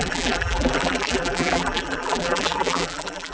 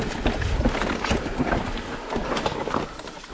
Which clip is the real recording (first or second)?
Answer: second